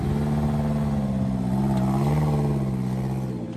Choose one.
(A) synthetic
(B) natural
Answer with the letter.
B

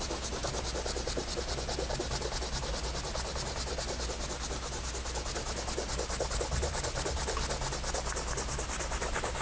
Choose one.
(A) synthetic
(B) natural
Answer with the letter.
B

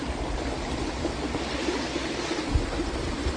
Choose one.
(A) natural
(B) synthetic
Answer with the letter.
A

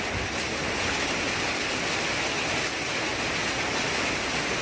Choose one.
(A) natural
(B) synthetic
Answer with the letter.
A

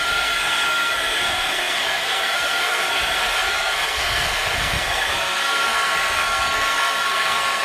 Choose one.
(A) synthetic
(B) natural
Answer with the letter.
A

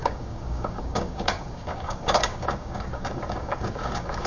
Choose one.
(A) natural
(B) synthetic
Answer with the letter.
B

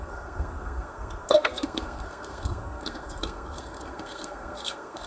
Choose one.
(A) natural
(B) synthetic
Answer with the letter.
B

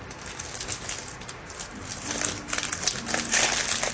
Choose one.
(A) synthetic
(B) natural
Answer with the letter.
B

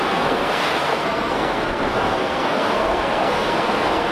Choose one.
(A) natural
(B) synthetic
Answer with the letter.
B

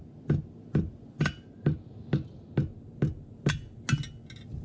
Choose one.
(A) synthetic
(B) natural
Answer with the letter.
B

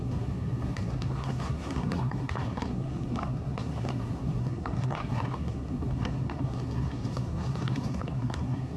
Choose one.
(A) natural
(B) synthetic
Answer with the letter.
B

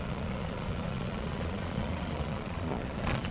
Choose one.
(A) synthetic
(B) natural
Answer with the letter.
A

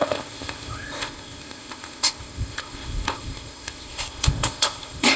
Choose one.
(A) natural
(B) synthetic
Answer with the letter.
B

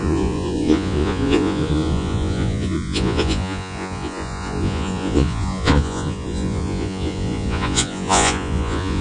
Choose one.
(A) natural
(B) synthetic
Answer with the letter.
B